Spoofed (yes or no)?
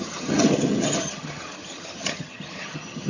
yes